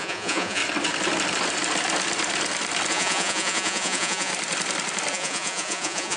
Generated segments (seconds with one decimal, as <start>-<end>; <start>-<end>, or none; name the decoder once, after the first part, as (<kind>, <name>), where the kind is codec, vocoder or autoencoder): 0.0-0.6 (vocoder, Vocos); 2.9-4.3; 5.1-6.2